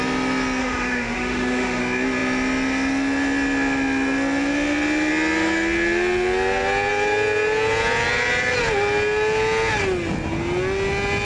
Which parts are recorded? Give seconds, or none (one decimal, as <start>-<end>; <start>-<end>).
0.0-0.6; 1.8-11.2